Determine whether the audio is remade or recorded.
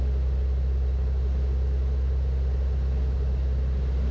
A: recorded